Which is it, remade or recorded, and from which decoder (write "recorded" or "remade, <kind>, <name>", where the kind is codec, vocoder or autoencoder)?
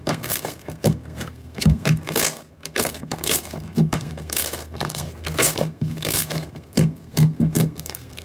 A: remade, codec, SNAC